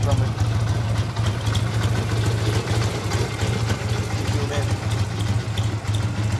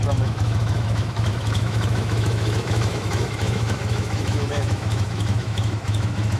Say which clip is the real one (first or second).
first